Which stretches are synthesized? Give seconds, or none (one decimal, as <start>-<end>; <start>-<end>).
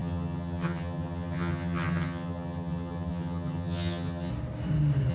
0.0-4.3